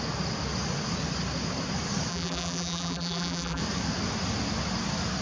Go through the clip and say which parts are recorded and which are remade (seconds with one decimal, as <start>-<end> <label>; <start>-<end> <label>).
0.0-2.1 recorded; 2.1-3.6 remade; 3.6-5.2 recorded

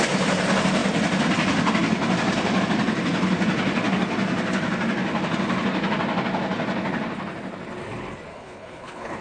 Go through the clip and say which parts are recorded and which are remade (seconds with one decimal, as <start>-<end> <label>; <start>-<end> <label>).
0.0-8.3 recorded; 8.3-9.2 remade

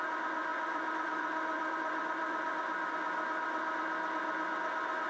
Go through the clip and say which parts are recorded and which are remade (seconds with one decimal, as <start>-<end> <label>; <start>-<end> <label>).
0.0-0.5 recorded; 0.5-2.9 remade; 2.9-5.1 recorded

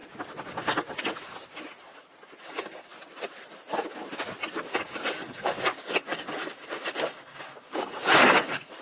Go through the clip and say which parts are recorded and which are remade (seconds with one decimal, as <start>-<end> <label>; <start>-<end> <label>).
0.0-2.4 recorded; 2.4-2.9 remade; 2.9-4.6 recorded; 4.6-8.8 remade

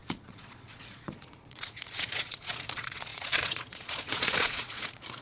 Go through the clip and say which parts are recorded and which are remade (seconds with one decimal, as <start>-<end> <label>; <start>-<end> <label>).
0.0-5.2 remade

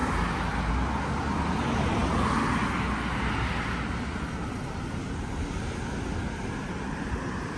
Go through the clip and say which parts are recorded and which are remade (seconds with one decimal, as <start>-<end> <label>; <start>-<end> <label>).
0.0-7.6 recorded

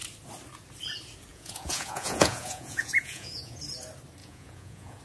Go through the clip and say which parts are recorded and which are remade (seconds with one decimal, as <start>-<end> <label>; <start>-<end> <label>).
0.0-1.3 recorded; 1.3-3.6 remade; 3.6-4.2 recorded; 4.2-5.0 remade

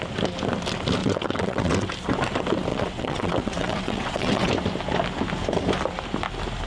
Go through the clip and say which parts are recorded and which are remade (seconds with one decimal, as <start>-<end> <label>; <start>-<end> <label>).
0.0-1.0 recorded; 1.0-1.9 remade; 1.9-2.7 recorded; 2.7-4.5 remade; 4.5-6.7 recorded